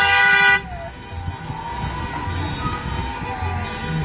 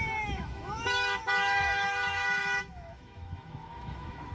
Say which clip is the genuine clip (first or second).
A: first